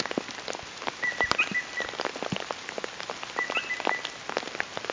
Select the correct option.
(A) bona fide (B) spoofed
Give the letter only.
A